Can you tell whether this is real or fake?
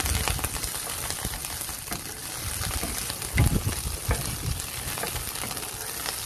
real